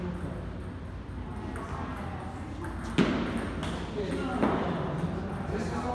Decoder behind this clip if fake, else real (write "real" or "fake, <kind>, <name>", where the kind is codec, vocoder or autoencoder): real